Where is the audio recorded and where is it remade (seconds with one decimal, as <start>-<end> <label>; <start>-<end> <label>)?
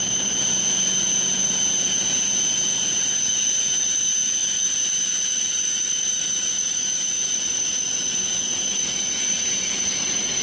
0.0-10.4 remade